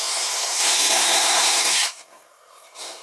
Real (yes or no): no